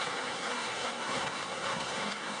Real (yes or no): no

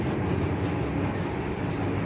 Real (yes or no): yes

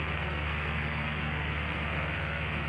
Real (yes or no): no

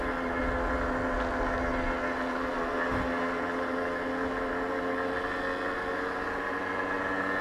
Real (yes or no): yes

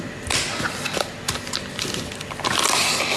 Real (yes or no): yes